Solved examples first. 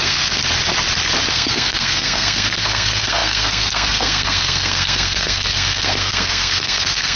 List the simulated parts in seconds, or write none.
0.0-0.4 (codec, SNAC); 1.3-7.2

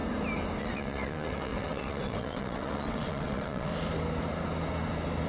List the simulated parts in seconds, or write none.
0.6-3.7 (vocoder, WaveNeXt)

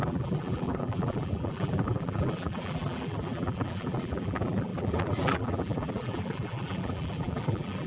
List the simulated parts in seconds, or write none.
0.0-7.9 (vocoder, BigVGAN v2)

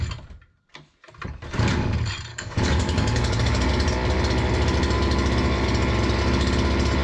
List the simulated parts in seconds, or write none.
2.3-3.7 (codec, DAC)